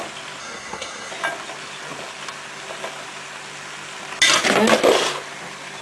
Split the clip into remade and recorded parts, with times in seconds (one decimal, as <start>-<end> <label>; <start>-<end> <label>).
0.0-0.4 recorded; 0.4-1.1 remade; 1.1-5.8 recorded